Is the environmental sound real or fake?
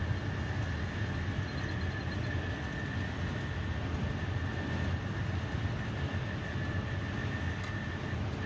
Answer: real